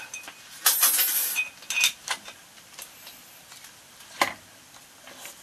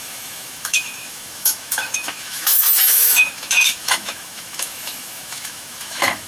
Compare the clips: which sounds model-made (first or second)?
second